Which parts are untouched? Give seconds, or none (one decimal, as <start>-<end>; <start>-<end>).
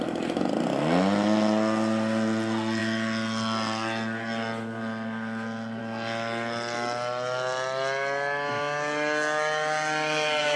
0.0-10.6